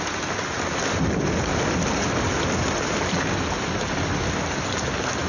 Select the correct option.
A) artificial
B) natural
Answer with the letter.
B